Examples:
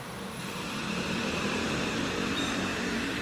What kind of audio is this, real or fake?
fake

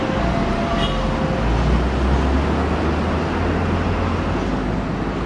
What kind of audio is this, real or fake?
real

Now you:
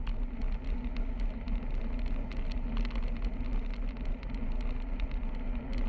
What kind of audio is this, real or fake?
real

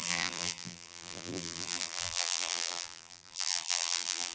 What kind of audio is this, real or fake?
fake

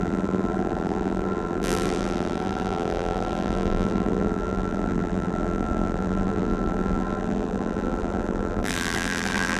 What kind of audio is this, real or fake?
fake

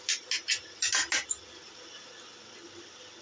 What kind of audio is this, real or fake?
real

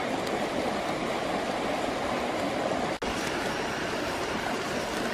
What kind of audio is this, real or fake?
real